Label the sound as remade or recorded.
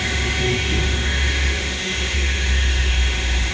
remade